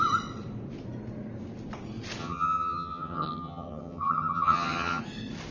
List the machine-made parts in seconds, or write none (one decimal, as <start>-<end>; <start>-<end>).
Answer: 2.2-5.0